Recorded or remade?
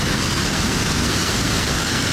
remade